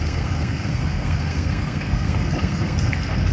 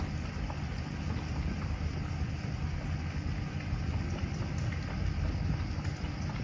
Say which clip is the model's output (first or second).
first